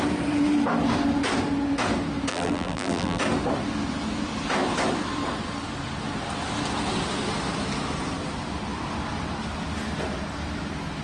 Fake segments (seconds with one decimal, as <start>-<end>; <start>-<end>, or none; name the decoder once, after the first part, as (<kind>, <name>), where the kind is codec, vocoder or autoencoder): 2.3-3.2 (vocoder, BigVGAN v2)